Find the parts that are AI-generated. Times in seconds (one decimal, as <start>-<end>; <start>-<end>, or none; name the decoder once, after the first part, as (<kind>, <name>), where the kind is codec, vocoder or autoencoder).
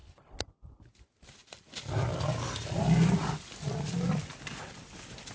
none